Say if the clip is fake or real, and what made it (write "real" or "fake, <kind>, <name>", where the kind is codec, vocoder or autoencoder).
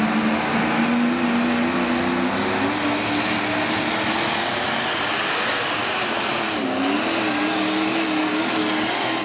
real